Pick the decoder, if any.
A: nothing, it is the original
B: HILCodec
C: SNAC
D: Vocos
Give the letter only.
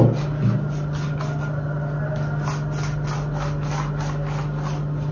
A